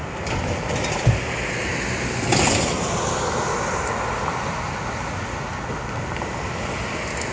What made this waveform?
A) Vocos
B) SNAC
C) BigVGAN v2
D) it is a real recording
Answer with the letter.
D